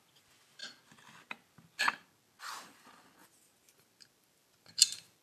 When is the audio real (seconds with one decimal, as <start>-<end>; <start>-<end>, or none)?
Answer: 0.0-5.2